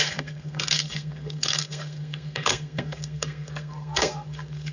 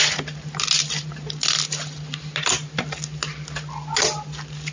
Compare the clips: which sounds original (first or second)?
second